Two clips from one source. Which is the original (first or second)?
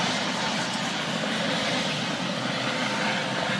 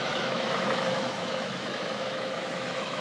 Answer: first